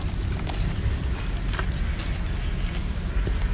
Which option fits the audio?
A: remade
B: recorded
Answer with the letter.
B